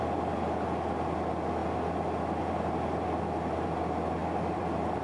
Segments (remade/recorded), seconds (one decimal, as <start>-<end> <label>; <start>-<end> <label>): 0.0-4.2 recorded; 4.2-5.0 remade